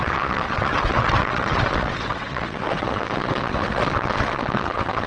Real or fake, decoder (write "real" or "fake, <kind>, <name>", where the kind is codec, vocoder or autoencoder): fake, vocoder, WaveNeXt